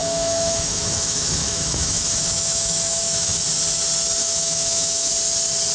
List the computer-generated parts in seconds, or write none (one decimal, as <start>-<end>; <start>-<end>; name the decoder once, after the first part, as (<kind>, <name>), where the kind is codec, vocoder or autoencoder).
0.0-3.4 (autoencoder, DAC-VAE); 4.2-5.1

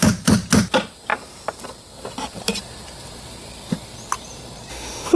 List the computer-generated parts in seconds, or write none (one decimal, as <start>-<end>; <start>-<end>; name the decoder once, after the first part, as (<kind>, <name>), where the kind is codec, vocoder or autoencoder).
4.7-5.2 (autoencoder, DAC-VAE)

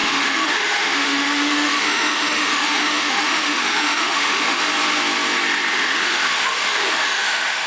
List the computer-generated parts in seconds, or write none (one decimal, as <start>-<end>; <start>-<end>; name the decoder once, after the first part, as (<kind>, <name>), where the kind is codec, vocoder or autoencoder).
0.0-4.6 (autoencoder, DAC-VAE); 5.7-7.7

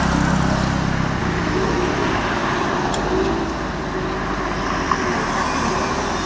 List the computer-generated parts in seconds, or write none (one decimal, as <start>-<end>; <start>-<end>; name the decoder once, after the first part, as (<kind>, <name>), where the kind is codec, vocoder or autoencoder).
1.2-1.9 (autoencoder, DAC-VAE)

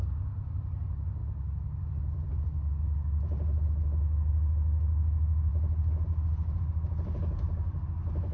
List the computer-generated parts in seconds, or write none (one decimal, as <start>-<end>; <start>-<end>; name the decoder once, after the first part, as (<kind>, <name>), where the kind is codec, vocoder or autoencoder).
none

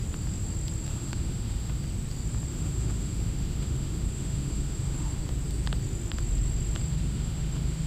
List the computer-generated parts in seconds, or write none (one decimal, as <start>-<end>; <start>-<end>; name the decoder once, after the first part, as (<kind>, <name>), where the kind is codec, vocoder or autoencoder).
0.9-1.8 (autoencoder, DAC-VAE); 2.5-5.2; 6.9-7.9

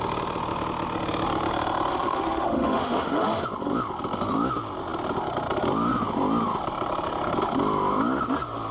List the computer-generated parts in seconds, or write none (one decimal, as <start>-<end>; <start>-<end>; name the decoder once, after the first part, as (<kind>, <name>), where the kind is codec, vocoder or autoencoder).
1.9-3.4 (autoencoder, DAC-VAE)